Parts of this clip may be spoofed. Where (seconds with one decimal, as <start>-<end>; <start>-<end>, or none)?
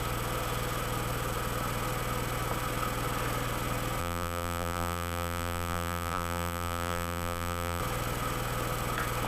4.0-7.8